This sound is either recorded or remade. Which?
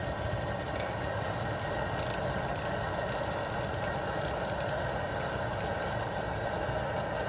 recorded